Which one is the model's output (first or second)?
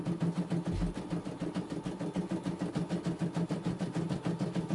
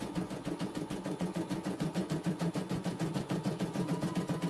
second